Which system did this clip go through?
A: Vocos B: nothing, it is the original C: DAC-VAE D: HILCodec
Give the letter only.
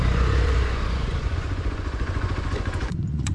A